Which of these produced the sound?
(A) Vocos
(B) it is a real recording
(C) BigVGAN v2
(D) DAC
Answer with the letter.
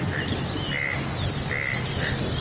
B